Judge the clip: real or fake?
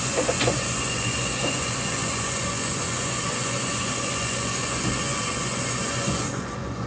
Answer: fake